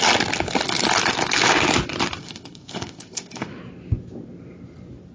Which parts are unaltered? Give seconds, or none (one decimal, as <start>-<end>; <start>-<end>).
0.0-2.2; 3.5-5.1